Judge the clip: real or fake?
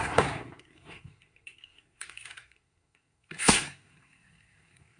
fake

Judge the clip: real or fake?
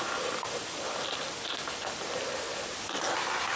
real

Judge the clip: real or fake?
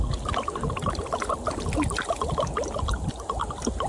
real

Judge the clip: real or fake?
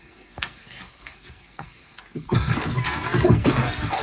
fake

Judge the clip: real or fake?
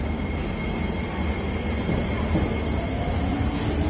real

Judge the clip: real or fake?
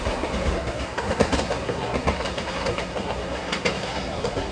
fake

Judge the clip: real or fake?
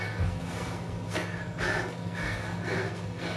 fake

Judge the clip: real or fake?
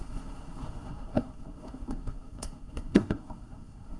fake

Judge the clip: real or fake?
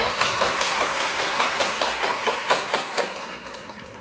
fake